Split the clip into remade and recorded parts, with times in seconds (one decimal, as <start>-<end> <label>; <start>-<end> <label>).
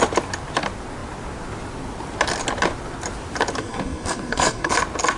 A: 0.0-3.6 recorded; 3.6-4.7 remade; 4.7-5.2 recorded